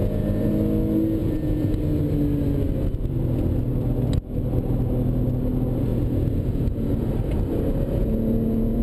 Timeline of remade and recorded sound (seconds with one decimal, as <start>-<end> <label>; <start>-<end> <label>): 0.0-0.5 remade; 0.5-1.2 recorded; 1.2-1.8 remade; 1.8-5.9 recorded; 5.9-7.1 remade; 7.1-8.0 recorded; 8.0-8.8 remade